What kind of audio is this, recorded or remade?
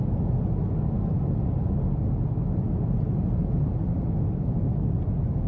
recorded